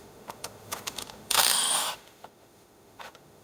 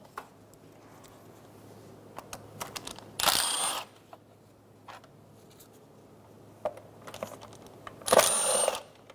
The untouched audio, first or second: second